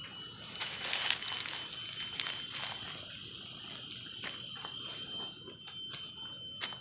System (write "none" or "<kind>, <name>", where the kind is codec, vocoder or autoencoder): none